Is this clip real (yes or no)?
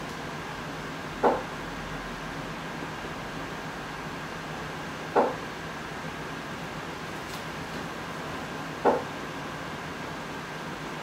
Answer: yes